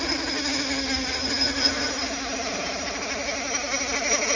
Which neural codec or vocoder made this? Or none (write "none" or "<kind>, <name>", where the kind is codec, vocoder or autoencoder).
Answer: none